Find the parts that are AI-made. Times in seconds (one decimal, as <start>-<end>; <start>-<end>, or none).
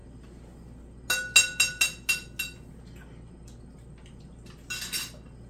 none